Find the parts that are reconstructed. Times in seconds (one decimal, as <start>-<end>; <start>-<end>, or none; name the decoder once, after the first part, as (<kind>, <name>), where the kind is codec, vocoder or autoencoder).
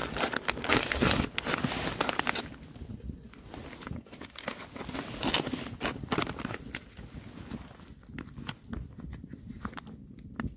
none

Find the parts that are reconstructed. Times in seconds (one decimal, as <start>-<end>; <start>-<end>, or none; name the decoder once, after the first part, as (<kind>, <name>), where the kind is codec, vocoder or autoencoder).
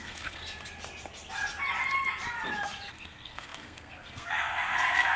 0.0-0.4 (codec, SNAC); 2.9-5.2